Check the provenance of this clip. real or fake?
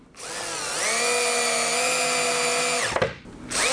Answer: real